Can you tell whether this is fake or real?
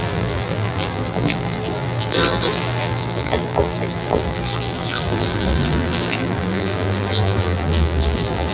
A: fake